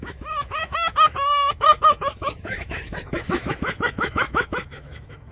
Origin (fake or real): fake